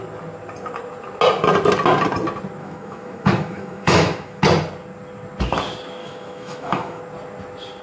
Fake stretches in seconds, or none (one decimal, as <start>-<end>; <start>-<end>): 2.6-4.4; 6.0-7.0